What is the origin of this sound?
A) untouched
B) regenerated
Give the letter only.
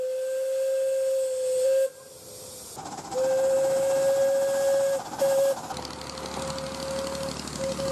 A